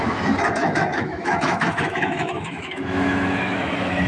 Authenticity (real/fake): fake